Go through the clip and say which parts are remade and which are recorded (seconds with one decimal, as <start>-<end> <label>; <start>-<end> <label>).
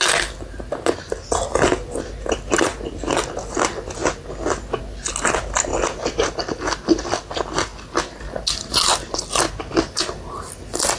0.0-11.0 recorded